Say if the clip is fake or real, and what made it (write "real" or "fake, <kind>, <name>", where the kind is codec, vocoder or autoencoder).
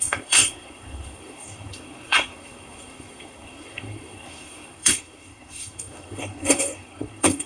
fake, codec, SNAC